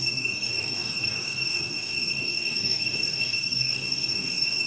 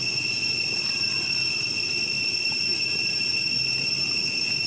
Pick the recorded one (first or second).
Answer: second